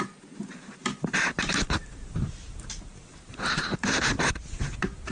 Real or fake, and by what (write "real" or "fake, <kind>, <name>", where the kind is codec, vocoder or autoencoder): fake, vocoder, BigVGAN v2